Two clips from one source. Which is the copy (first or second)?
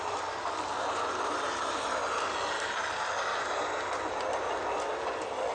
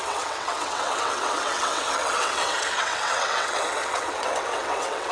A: second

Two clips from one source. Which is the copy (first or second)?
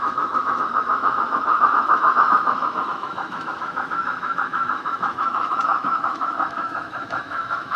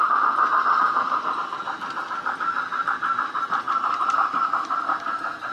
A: first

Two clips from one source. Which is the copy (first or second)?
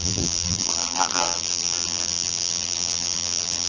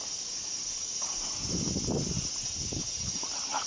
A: first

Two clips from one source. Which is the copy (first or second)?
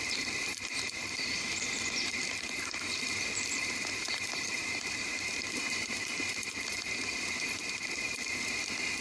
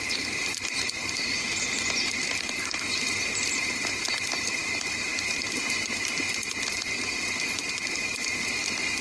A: first